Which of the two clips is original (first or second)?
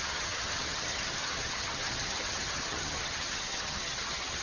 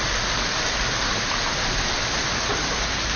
second